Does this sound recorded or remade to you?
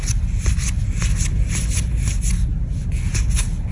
recorded